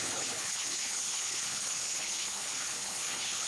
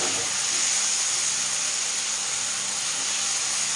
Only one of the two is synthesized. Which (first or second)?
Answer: first